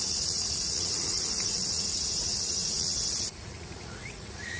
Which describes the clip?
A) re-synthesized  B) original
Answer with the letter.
A